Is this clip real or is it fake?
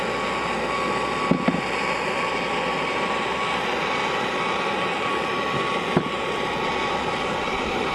real